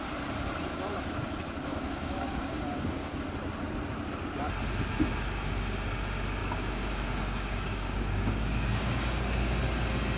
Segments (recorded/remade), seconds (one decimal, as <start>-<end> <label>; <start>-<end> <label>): 0.0-1.7 recorded; 1.7-3.2 remade; 3.2-6.4 recorded; 6.4-9.6 remade; 9.6-10.2 recorded